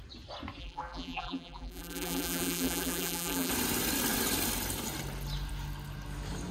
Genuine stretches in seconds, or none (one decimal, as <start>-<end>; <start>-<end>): 0.0-0.6; 3.5-6.5